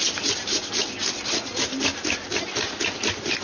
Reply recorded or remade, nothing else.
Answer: recorded